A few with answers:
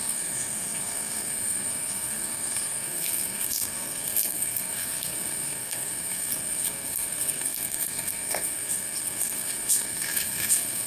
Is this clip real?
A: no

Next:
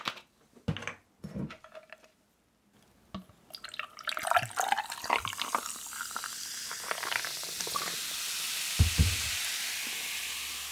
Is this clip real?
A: yes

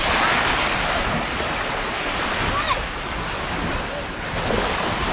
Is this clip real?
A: yes